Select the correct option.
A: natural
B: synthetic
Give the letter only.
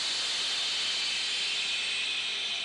A